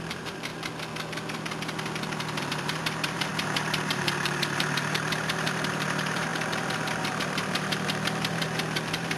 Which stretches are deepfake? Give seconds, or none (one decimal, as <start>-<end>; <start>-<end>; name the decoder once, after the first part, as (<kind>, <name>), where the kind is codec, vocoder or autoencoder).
0.0-0.5 (vocoder, BigVGAN v2); 2.4-9.2